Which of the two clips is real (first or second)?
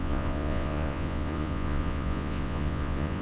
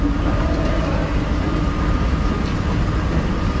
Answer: second